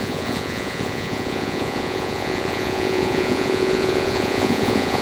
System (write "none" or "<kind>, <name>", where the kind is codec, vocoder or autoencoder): vocoder, Vocos